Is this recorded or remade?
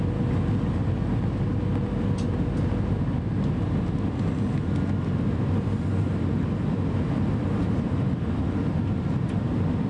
recorded